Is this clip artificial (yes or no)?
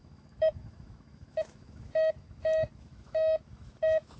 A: yes